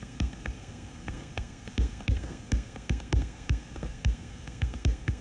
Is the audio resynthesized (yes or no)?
yes